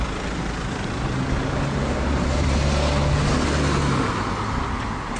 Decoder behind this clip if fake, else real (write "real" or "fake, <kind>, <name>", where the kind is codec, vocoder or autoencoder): real